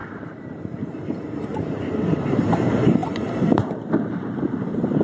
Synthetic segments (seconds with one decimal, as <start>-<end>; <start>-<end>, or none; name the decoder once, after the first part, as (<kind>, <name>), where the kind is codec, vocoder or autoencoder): 0.0-5.0 (vocoder, BigVGAN v2)